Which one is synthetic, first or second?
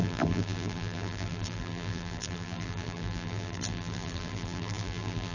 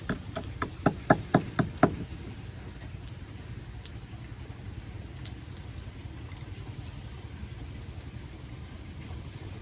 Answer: first